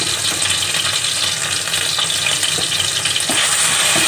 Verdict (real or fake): real